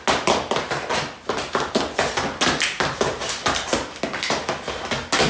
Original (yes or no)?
yes